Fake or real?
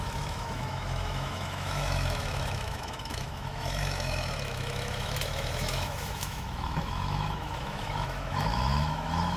fake